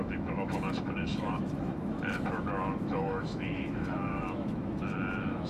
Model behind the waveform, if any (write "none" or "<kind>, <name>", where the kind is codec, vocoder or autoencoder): autoencoder, DAC-VAE